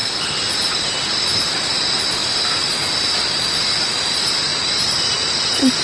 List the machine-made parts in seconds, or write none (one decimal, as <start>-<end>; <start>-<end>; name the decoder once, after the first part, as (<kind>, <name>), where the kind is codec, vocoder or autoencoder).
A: 0.0-2.2 (vocoder, BigVGAN v2); 3.6-5.8